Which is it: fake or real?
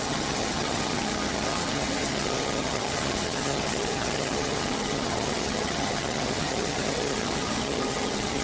fake